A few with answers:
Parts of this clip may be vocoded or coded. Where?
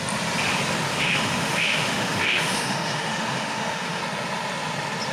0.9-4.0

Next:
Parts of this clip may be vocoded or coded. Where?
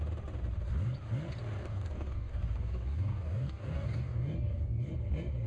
1.6-4.9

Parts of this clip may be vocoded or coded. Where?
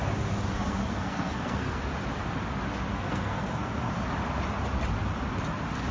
0.5-1.8; 2.9-3.9